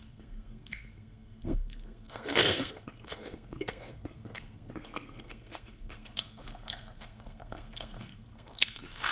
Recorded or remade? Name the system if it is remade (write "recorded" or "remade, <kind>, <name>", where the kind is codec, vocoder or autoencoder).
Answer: remade, codec, SNAC